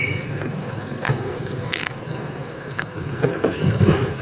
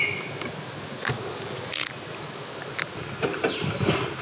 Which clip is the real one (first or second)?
second